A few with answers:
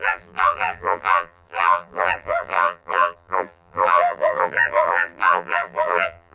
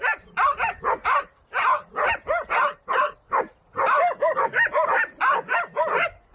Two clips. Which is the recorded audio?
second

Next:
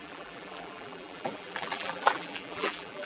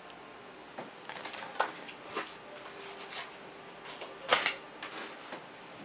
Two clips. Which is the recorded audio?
second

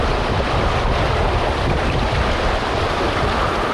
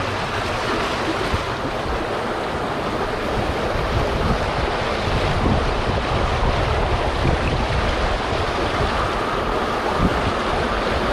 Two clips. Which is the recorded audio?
second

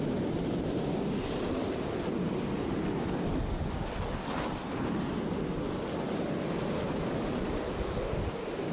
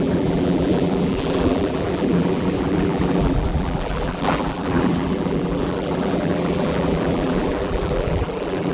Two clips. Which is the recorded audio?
first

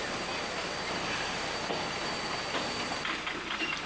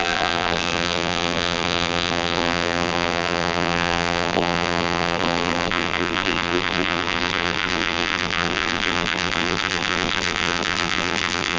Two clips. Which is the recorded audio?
first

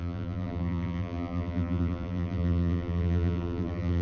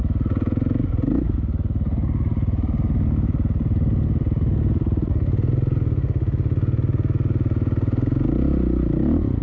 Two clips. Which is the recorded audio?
second